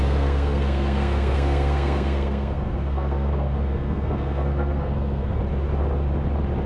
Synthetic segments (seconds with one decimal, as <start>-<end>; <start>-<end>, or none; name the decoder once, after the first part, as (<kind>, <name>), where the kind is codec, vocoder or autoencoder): 0.0-5.4 (codec, SNAC)